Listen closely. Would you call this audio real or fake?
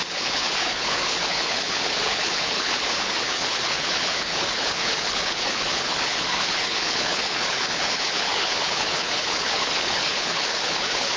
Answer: fake